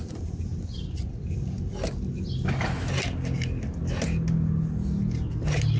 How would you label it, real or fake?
real